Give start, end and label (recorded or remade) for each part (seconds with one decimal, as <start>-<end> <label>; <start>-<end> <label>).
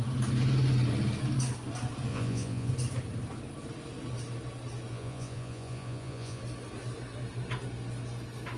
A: 0.0-2.1 recorded; 2.1-2.7 remade; 2.7-4.9 recorded; 4.9-6.4 remade; 6.4-8.6 recorded